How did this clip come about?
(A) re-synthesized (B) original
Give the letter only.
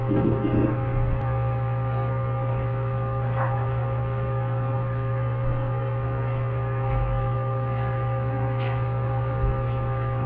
A